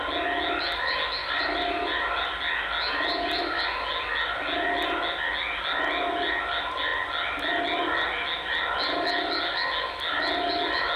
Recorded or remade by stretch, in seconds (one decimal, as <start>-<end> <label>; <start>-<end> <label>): 0.0-1.2 recorded; 1.2-2.4 remade; 2.4-11.0 recorded